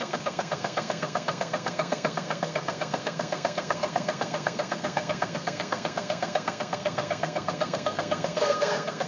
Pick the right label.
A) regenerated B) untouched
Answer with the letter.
A